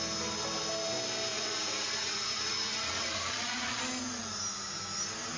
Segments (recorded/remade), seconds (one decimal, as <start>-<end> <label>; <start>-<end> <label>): 0.0-1.3 recorded; 1.3-3.8 remade; 3.8-5.4 recorded